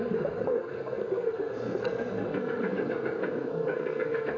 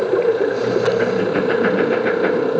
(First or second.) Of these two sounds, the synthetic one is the first